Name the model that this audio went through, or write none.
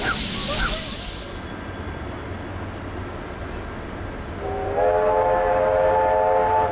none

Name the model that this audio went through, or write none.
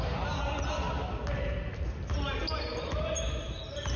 none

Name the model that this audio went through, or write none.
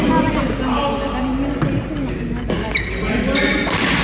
none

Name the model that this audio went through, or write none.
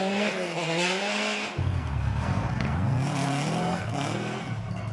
codec, SNAC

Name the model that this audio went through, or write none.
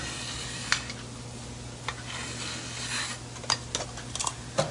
none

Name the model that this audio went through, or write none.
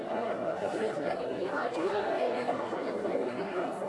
codec, SNAC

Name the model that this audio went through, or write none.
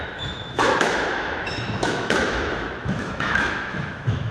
autoencoder, DAC-VAE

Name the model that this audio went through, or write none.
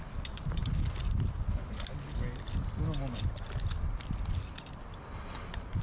none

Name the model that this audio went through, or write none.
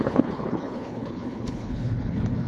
codec, HILCodec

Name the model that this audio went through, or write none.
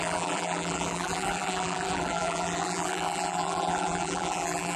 vocoder, BigVGAN v2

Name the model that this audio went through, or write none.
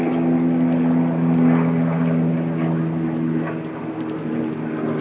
none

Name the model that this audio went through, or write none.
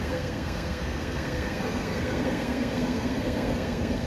codec, SNAC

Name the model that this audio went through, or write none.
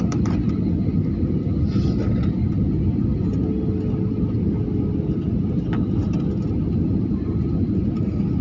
none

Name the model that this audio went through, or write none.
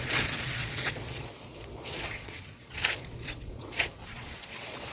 vocoder, Vocos